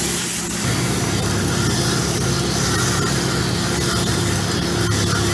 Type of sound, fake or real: real